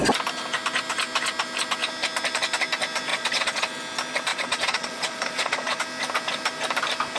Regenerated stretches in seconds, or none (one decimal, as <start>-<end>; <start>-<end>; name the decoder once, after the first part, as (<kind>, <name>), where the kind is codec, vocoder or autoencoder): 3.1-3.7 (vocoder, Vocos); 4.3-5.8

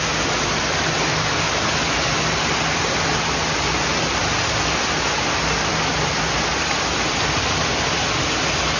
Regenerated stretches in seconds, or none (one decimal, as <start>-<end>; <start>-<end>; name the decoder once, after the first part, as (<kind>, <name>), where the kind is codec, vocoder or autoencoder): none

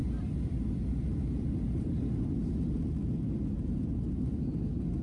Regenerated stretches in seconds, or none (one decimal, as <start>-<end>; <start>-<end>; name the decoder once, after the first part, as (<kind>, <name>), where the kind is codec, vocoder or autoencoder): none